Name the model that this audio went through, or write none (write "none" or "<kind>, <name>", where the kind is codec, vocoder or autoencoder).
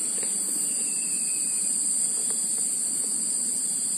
none